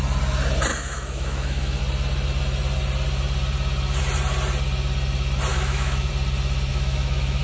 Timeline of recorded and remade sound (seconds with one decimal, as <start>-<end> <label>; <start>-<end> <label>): 0.0-0.7 recorded; 0.7-1.8 remade; 1.8-5.5 recorded; 5.5-6.1 remade; 6.1-6.7 recorded; 6.7-7.4 remade